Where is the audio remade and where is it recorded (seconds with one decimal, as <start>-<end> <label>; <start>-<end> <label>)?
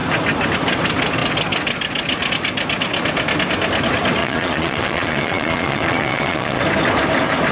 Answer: 0.0-4.2 recorded; 4.2-6.6 remade; 6.6-7.5 recorded